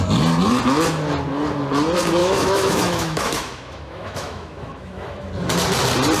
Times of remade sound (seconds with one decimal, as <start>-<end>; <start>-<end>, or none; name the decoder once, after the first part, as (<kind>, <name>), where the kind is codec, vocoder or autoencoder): 2.2-5.3 (autoencoder, DAC-VAE)